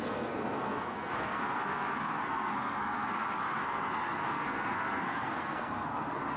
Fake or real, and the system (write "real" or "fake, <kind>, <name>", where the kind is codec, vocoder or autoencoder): fake, codec, SNAC